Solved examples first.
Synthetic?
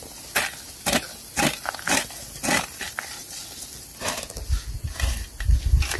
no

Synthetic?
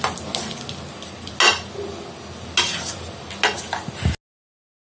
no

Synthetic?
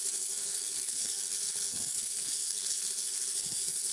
yes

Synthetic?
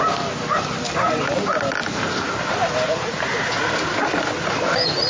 no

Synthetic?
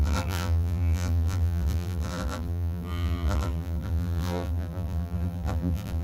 yes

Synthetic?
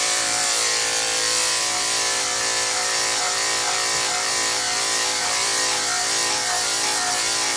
yes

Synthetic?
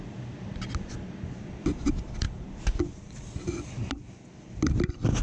no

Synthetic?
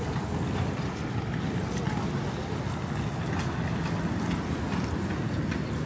no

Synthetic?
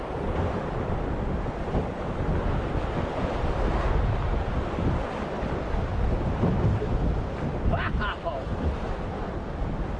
no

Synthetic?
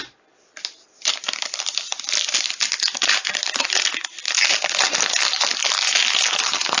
no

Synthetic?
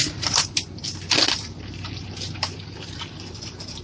yes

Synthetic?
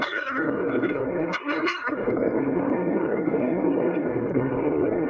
yes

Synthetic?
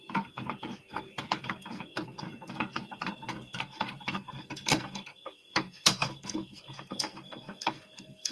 yes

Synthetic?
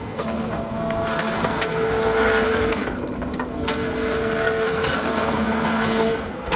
yes